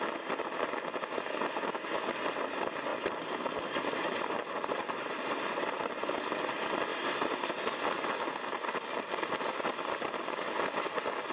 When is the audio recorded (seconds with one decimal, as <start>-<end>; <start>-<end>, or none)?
0.0-2.9; 6.0-6.9; 7.5-11.3